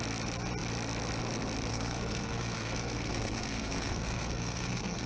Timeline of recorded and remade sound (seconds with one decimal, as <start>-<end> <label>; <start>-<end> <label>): 0.0-1.7 recorded; 1.7-5.1 remade